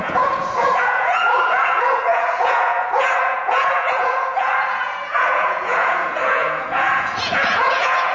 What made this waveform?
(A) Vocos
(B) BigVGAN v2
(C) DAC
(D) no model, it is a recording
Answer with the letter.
A